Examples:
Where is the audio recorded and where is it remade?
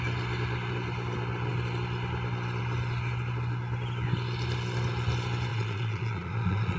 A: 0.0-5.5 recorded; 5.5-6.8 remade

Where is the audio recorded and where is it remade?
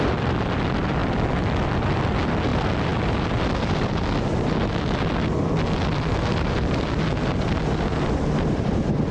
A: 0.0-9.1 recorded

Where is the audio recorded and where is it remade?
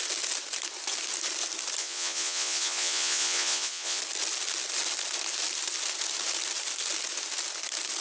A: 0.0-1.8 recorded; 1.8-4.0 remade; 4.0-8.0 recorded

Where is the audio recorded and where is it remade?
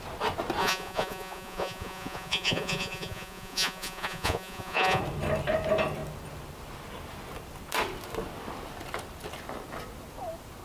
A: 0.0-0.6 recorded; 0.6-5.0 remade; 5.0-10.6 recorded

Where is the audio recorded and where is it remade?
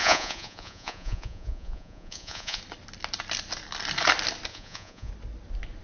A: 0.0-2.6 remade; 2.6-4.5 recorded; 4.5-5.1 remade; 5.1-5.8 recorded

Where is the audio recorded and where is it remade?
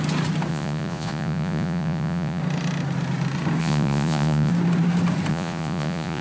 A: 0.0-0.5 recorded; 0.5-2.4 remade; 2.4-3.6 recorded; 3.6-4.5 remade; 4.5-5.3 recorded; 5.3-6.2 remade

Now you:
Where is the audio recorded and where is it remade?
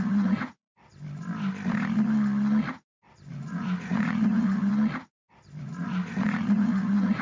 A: 0.0-0.7 remade; 0.7-3.3 recorded; 3.3-4.7 remade; 4.7-5.6 recorded; 5.6-7.2 remade